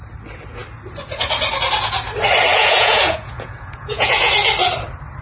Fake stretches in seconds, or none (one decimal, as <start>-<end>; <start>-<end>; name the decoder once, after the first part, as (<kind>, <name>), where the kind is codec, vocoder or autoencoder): 2.5-4.3 (vocoder, Vocos)